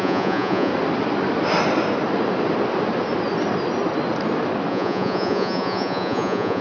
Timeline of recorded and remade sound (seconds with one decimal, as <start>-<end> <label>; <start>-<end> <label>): 0.0-0.7 remade; 0.7-4.7 recorded; 4.7-6.6 remade